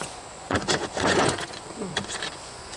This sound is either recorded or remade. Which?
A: remade